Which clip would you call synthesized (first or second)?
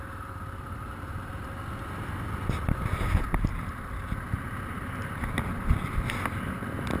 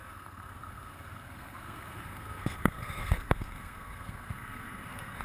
second